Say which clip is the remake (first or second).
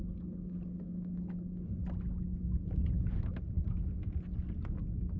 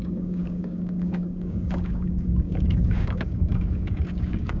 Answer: second